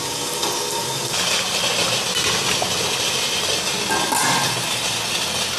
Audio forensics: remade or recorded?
recorded